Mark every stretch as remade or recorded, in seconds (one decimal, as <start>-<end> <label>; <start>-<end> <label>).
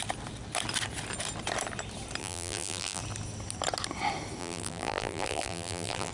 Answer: 0.0-2.2 recorded; 2.2-3.0 remade; 3.0-4.4 recorded; 4.4-6.1 remade